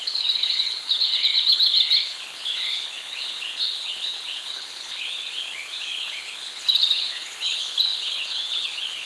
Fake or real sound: fake